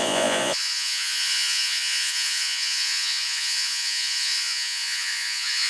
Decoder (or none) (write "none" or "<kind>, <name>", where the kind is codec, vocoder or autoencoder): vocoder, Vocos